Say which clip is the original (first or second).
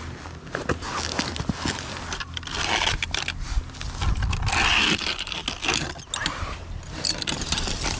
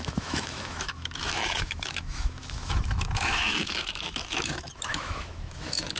first